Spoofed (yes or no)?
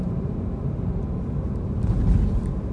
no